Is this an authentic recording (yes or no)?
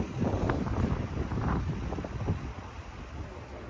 yes